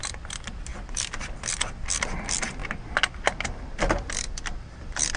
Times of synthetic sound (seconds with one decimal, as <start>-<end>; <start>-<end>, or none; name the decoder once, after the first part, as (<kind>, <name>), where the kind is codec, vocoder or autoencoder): none